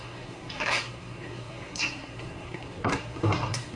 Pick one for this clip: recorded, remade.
remade